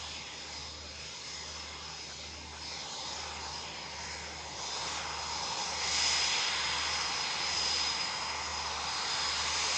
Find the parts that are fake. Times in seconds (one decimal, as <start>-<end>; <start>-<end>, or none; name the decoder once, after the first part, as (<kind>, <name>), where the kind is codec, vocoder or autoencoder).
none